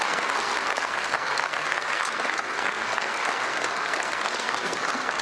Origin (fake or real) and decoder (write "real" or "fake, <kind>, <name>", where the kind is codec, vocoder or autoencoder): fake, codec, SNAC